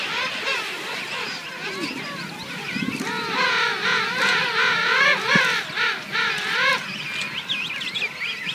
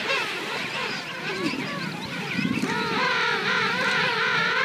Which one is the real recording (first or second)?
first